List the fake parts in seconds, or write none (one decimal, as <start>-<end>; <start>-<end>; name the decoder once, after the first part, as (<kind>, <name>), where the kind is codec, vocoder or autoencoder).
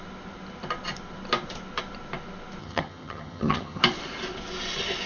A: 2.6-3.8 (vocoder, HiFi-GAN)